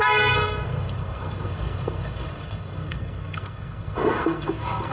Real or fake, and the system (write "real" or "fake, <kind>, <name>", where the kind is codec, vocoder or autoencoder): fake, codec, SNAC